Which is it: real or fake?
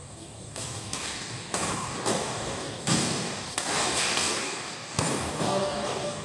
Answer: fake